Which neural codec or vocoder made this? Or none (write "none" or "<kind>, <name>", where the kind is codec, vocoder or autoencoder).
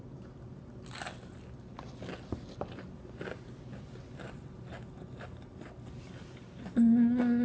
none